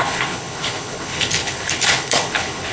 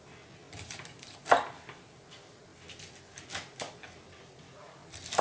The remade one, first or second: first